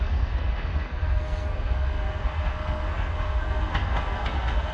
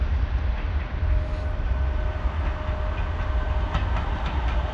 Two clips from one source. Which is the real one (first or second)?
second